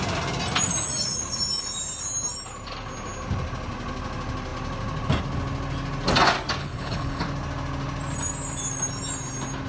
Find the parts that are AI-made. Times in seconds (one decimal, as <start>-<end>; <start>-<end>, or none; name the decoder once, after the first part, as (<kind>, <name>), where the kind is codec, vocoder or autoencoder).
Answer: 6.6-7.2 (codec, HILCodec)